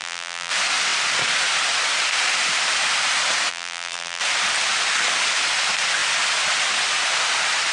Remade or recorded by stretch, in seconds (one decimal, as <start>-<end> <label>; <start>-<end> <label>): 0.0-0.5 remade; 0.5-3.5 recorded; 3.5-4.2 remade; 4.2-7.7 recorded